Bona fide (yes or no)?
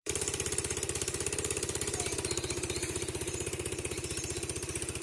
no